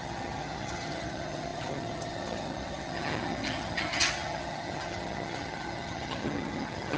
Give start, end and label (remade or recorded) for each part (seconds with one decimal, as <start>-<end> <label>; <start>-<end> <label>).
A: 0.0-7.0 remade